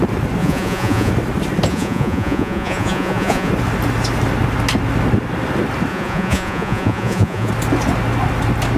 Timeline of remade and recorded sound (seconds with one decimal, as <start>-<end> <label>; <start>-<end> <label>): 0.0-0.4 recorded; 0.4-1.1 remade; 1.1-1.7 recorded; 1.7-3.5 remade; 3.5-5.9 recorded; 5.9-7.5 remade; 7.5-8.8 recorded